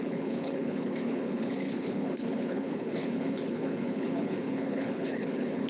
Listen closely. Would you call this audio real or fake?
fake